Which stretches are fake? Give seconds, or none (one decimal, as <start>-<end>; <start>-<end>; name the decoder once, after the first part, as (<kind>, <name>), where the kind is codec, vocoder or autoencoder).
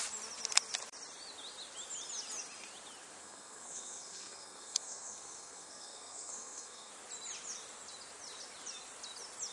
3.2-6.9 (codec, SNAC)